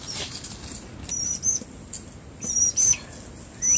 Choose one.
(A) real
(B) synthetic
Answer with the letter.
A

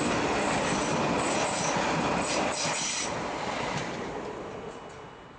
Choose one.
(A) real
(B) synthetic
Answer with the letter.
A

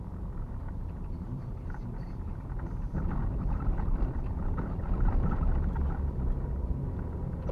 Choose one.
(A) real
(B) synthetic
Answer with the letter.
B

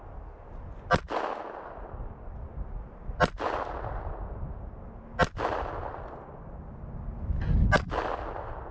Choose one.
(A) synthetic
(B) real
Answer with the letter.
B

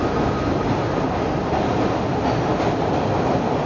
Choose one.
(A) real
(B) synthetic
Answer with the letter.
A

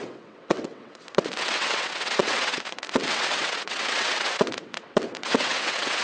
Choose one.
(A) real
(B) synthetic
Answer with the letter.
B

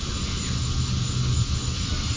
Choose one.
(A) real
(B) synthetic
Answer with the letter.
A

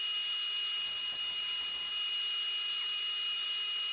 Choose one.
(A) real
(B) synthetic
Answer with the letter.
A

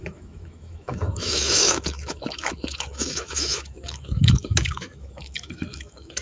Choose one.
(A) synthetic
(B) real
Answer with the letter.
A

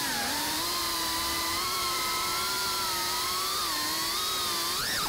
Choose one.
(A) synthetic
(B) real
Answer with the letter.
A